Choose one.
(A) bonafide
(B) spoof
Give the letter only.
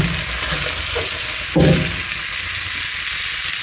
A